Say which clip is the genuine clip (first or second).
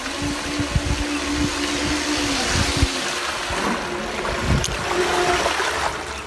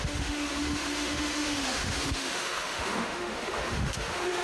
first